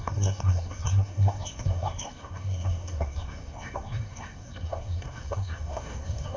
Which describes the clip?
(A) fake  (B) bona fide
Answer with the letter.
A